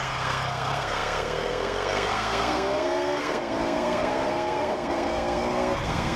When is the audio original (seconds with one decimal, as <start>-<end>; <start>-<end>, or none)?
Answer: none